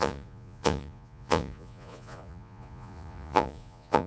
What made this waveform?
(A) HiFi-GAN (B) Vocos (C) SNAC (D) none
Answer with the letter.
B